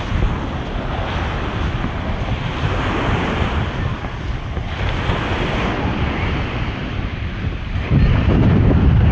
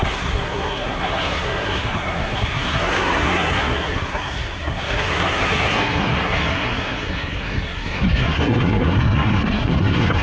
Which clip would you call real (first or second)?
first